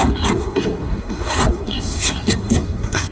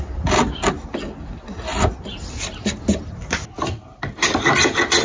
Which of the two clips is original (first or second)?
second